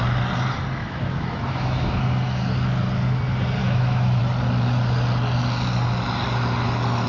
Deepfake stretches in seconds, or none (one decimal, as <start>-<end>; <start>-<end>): 0.8-2.0; 3.6-4.2